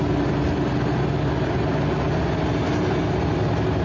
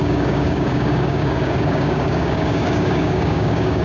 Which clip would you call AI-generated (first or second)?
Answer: second